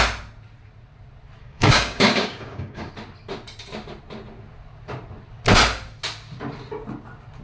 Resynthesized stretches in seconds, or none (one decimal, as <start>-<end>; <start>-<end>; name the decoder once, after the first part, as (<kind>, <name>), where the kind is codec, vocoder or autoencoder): 1.4-2.9 (codec, DAC)